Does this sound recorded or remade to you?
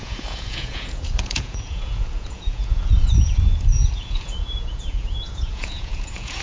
remade